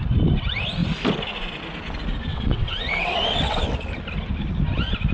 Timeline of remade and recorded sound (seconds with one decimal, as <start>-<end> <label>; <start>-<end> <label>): 0.0-2.3 recorded; 2.3-3.6 remade; 3.6-5.1 recorded